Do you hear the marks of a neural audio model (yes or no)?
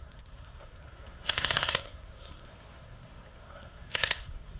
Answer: yes